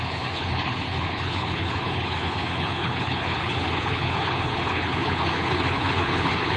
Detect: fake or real fake